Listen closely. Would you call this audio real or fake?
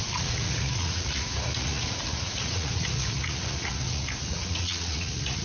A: fake